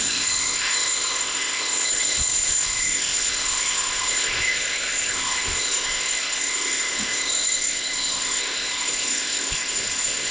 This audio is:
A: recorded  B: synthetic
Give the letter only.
B